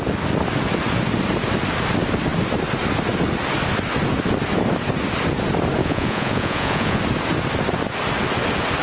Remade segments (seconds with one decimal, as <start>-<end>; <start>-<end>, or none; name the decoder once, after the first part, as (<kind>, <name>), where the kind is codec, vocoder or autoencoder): 5.8-7.0 (vocoder, Vocos)